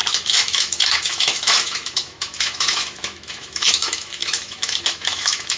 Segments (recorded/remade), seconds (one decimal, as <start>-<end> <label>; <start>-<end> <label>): 0.0-5.6 remade